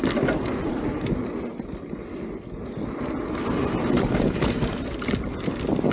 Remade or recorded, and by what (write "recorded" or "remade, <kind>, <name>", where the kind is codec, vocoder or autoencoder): recorded